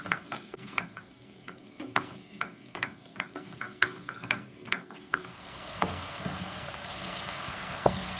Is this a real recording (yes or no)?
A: no